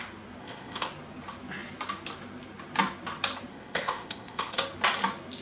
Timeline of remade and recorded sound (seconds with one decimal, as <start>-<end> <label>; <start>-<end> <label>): 0.0-0.4 recorded; 0.4-0.9 remade; 0.9-3.5 recorded; 3.5-4.6 remade; 4.6-5.4 recorded